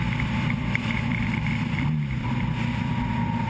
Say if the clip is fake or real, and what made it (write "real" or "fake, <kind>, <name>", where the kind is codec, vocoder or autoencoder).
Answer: fake, vocoder, BigVGAN v2